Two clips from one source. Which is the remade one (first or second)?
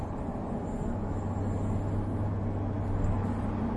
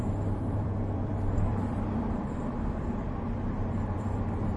second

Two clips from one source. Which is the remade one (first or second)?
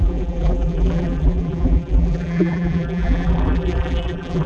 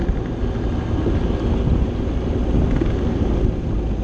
first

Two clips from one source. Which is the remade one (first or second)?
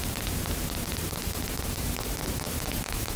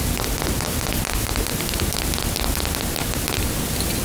first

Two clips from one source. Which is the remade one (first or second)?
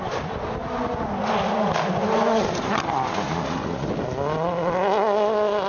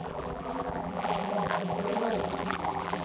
second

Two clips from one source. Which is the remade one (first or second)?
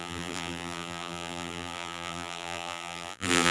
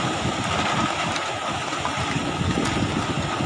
first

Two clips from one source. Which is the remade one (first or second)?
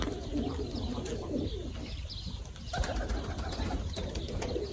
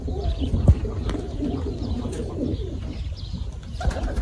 second